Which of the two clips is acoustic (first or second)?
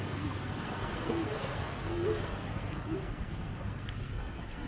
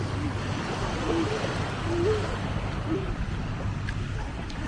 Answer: second